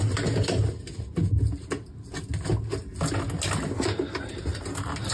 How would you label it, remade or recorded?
recorded